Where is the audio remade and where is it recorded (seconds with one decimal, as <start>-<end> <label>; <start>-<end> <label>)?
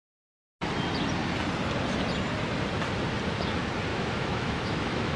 0.0-3.9 recorded; 3.9-5.2 remade